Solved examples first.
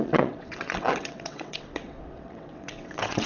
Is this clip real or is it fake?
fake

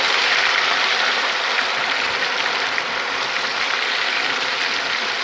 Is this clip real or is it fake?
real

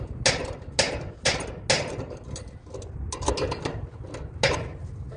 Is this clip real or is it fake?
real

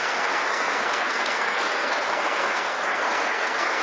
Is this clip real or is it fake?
fake